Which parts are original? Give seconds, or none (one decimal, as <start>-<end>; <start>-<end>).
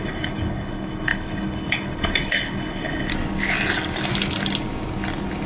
3.1-5.5